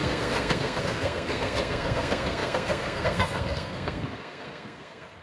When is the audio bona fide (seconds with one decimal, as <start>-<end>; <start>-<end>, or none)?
none